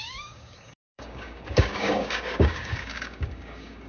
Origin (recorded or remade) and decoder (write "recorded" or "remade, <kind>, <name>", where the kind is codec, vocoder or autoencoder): remade, codec, DAC